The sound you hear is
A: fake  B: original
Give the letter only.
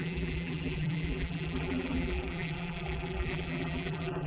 A